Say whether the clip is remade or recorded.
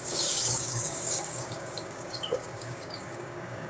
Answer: remade